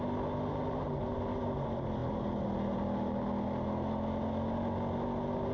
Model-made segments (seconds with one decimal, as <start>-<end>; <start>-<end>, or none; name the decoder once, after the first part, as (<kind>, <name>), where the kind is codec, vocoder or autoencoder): none